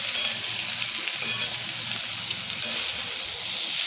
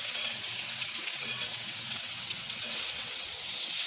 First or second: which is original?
first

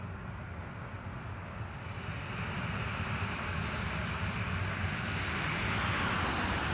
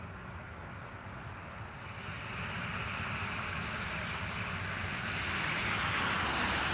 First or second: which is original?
second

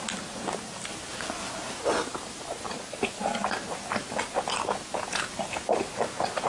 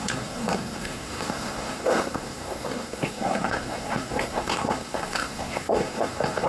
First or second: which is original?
first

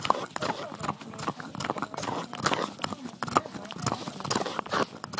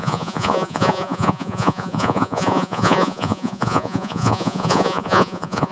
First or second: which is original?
first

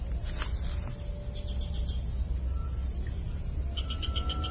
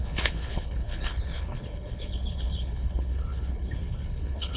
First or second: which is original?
first